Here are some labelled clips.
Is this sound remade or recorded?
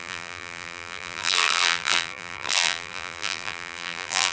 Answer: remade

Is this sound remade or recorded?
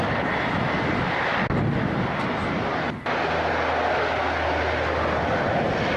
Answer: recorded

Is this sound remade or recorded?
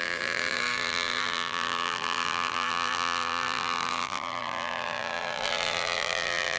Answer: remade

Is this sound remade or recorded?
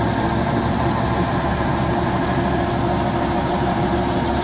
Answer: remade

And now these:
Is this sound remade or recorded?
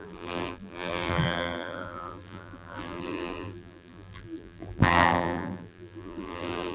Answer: remade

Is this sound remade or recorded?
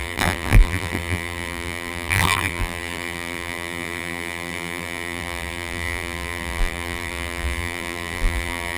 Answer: remade